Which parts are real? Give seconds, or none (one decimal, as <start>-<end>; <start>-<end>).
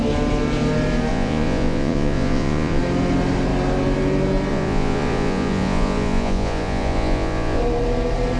0.0-1.1; 2.8-4.5; 7.6-8.4